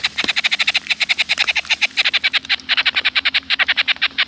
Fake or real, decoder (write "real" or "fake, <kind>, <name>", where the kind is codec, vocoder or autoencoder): fake, vocoder, BigVGAN v2